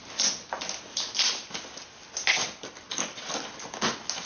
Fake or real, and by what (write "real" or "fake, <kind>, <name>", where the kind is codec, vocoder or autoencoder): real